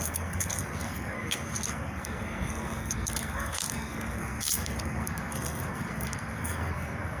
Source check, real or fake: fake